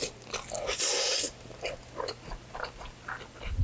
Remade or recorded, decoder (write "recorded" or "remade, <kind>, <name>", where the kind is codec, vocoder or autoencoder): recorded